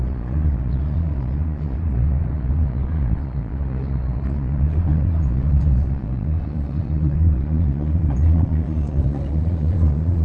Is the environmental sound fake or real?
fake